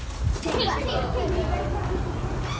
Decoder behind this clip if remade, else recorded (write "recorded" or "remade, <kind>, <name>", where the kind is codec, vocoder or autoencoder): recorded